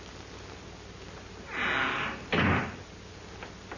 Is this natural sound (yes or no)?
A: yes